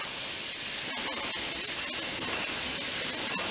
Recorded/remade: recorded